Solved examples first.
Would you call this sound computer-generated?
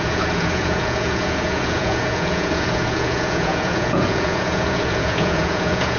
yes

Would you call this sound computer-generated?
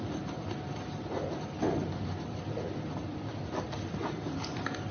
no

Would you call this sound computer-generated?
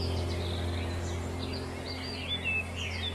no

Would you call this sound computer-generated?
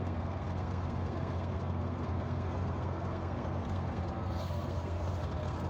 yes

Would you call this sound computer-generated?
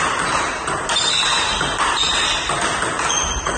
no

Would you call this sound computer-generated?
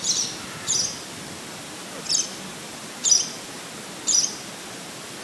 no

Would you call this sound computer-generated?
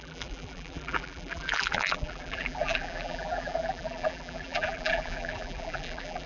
yes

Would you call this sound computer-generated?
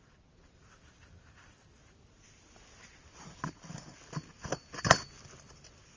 no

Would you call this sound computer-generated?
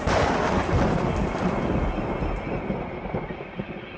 no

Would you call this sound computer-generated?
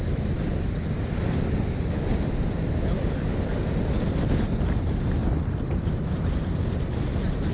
no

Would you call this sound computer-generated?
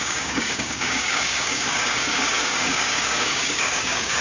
yes